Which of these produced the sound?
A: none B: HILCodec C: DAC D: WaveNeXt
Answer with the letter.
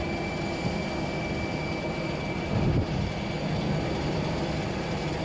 A